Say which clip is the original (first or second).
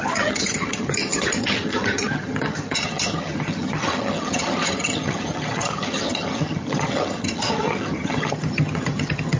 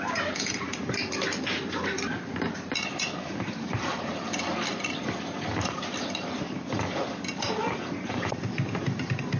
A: second